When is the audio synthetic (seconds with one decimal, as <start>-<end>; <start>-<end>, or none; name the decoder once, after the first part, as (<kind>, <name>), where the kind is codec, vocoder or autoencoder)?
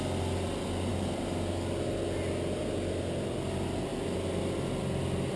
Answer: none